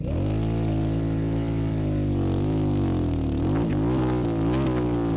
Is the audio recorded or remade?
recorded